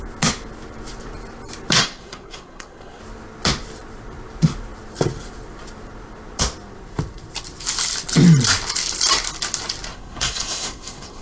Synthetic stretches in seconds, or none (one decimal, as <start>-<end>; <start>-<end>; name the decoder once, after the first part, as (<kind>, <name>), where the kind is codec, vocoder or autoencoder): 1.8-3.0 (codec, SNAC); 9.9-11.2